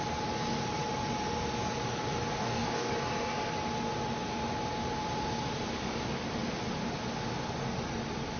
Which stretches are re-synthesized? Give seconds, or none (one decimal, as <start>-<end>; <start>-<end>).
2.4-2.9